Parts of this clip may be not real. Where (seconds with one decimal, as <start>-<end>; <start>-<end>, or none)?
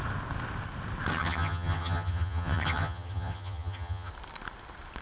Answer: 1.1-4.1